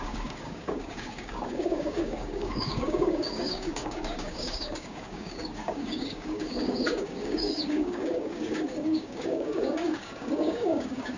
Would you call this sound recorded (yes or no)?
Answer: no